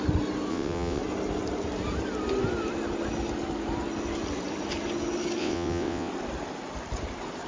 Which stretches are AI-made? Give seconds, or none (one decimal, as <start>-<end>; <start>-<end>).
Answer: 0.5-1.0; 5.4-6.1